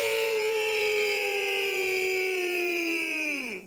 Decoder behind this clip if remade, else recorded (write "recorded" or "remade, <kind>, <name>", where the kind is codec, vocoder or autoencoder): remade, vocoder, Vocos